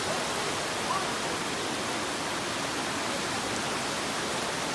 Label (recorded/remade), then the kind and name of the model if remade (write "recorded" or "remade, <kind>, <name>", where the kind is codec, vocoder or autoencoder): recorded